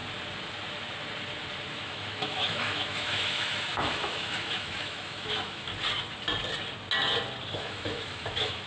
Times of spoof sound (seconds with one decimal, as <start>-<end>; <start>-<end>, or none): 1.7-5.7; 7.5-8.7